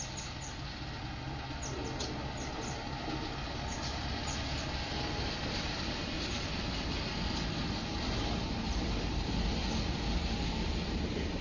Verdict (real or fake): real